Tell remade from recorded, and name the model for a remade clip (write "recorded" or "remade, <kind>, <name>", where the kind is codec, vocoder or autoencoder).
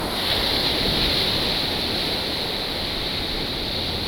recorded